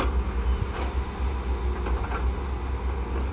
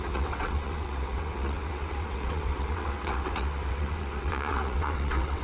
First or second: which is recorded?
first